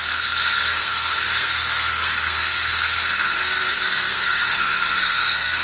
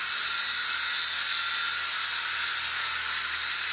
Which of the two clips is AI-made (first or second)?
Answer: first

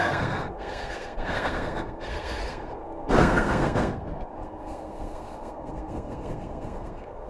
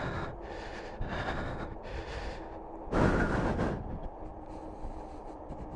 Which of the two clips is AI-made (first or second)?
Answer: first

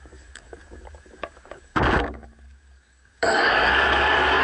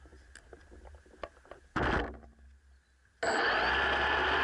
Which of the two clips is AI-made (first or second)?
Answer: first